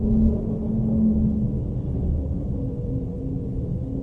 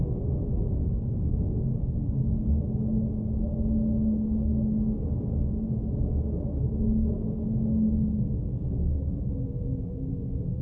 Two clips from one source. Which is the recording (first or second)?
first